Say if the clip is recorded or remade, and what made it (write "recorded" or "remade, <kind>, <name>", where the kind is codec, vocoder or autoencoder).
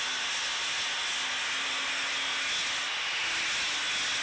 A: recorded